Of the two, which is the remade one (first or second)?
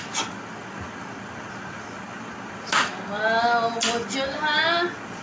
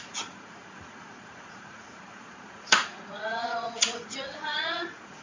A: second